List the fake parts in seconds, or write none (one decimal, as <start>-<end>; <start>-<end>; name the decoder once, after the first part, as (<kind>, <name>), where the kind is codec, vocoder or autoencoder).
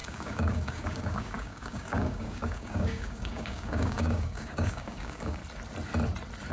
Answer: 0.0-5.4 (codec, DAC)